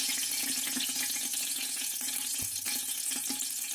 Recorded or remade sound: remade